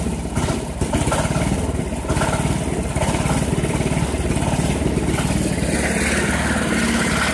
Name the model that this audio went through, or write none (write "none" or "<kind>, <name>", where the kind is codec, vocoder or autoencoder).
none